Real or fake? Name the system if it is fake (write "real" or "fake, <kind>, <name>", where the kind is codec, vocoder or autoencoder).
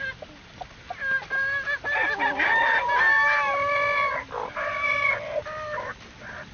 real